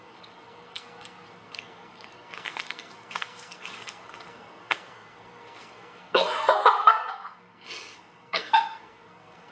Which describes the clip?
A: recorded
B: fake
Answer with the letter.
B